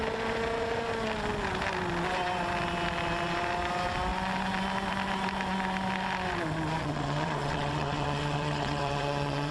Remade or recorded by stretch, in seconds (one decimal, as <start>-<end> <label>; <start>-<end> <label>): 0.0-6.8 recorded; 6.8-9.5 remade